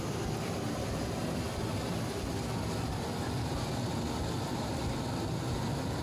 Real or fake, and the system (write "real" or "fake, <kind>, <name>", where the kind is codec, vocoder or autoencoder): real